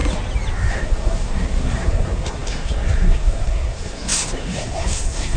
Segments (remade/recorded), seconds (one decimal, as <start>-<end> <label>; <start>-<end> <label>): 0.0-0.7 recorded; 0.7-5.4 remade